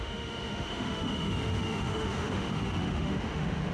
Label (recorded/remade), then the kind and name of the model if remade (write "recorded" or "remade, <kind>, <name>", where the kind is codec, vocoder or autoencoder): remade, autoencoder, DAC-VAE